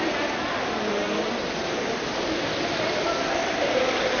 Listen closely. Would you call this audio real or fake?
real